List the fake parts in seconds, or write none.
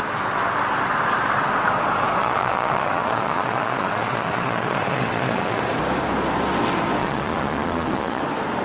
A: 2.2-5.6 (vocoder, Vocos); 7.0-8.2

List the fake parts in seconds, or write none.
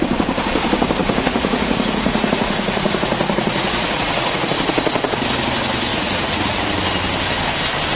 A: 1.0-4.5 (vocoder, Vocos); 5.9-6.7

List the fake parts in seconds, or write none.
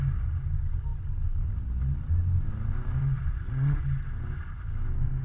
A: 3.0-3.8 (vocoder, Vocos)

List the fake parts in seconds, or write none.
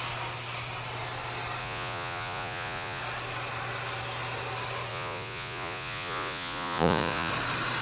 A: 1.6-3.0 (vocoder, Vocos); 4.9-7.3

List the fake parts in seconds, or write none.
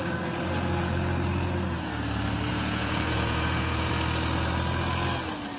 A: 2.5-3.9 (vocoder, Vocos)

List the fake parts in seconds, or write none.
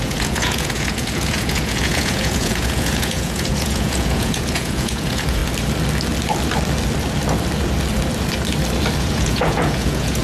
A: 0.0-5.4 (vocoder, Vocos); 9.0-10.2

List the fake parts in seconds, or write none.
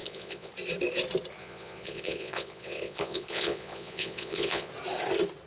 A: 0.0-0.5 (vocoder, Vocos); 1.4-4.7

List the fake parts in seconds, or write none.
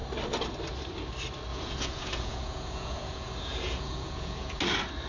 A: 1.5-4.6 (vocoder, Vocos)